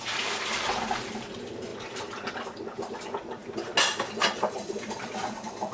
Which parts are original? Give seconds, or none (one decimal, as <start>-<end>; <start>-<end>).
0.0-5.7